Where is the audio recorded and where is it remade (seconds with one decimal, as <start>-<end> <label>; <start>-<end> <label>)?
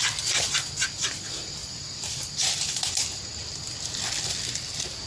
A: 0.0-5.1 recorded